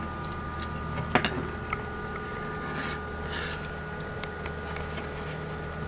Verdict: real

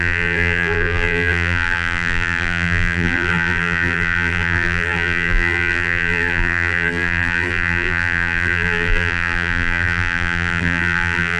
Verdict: fake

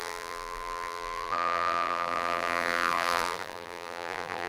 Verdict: fake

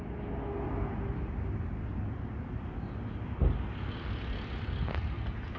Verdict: real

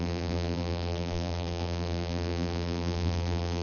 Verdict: fake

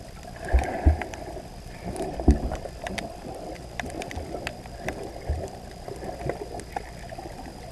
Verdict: fake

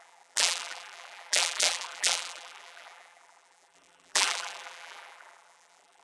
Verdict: fake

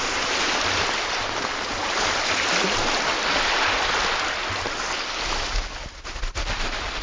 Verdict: real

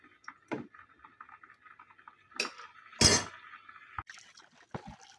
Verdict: real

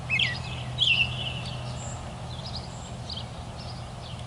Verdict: real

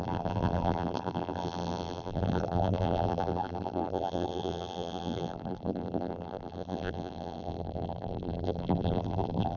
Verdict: fake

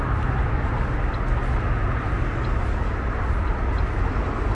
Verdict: real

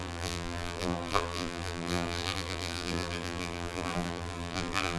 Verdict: fake